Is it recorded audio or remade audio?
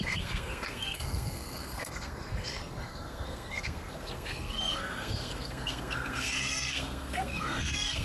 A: remade